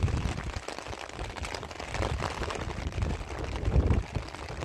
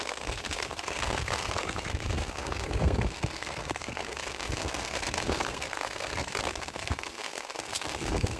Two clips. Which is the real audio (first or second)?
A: first